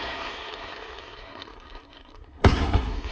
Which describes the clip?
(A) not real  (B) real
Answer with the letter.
A